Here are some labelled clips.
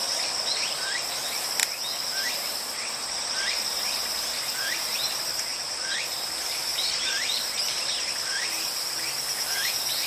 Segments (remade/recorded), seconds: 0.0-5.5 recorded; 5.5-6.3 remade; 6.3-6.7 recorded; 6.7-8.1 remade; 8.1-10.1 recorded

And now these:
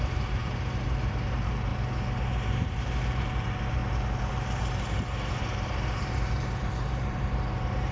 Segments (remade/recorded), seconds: 0.0-1.7 remade; 1.7-2.3 recorded; 2.3-3.8 remade; 3.8-4.3 recorded; 4.3-7.9 remade

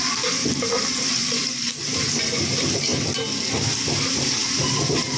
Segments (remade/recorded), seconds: 0.0-1.2 remade; 1.2-2.0 recorded; 2.0-2.9 remade; 2.9-4.1 recorded; 4.1-5.2 remade

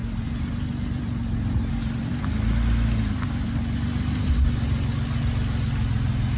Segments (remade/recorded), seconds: 0.0-2.1 remade; 2.1-6.4 recorded